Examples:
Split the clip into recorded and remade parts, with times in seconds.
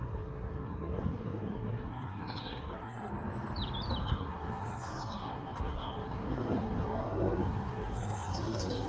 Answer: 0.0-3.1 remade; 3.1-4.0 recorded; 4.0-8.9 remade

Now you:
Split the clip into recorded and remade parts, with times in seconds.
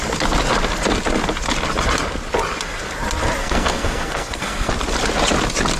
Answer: 0.0-3.4 recorded; 3.4-4.7 remade; 4.7-5.8 recorded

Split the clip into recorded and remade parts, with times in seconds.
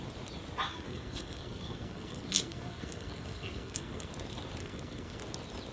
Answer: 0.0-0.7 recorded; 0.7-4.1 remade; 4.1-4.6 recorded; 4.6-5.2 remade; 5.2-5.7 recorded